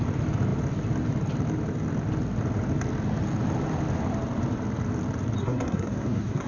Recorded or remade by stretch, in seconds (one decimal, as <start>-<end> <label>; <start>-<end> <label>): 0.0-5.4 recorded; 5.4-6.5 remade